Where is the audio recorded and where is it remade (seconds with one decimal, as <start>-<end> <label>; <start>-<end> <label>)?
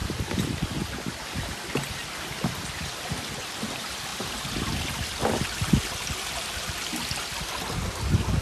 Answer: 0.0-8.4 recorded